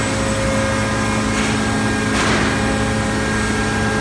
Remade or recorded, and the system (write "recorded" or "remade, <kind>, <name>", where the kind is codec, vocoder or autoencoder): recorded